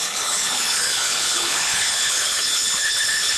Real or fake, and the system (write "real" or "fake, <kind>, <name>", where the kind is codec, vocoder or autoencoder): fake, codec, HILCodec